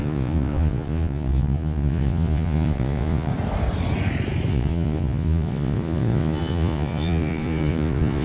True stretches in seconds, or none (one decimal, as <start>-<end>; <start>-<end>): 3.3-4.5